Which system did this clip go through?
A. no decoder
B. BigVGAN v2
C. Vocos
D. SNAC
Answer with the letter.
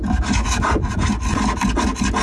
A